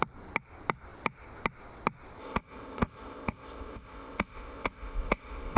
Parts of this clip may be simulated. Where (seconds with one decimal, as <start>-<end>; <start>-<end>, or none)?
2.2-5.6